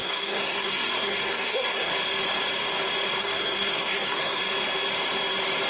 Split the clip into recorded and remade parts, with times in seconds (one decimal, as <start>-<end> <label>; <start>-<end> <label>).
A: 0.0-1.9 remade; 1.9-3.2 recorded; 3.2-4.4 remade; 4.4-5.7 recorded

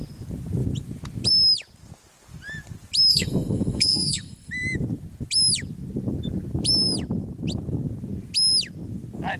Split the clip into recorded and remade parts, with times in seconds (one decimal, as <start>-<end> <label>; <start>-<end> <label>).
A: 0.0-3.1 recorded; 3.1-4.5 remade; 4.5-9.4 recorded

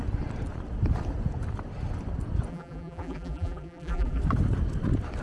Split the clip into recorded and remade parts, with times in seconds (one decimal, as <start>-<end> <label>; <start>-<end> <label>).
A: 0.0-2.5 recorded; 2.5-4.2 remade; 4.2-5.2 recorded